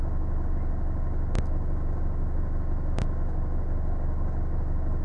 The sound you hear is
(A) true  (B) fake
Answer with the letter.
A